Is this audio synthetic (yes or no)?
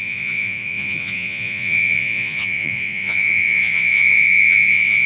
yes